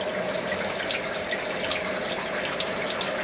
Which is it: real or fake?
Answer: real